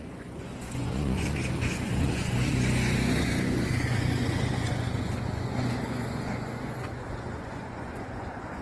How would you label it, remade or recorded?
remade